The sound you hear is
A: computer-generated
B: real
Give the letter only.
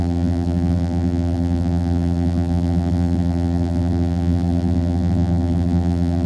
A